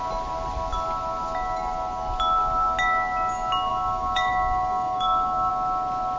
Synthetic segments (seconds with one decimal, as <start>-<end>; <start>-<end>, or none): 3.7-5.5